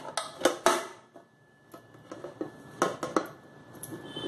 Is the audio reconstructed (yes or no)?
no